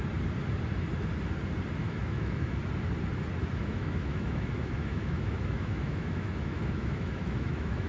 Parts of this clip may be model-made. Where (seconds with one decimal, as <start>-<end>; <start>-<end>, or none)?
1.8-2.6; 3.6-7.9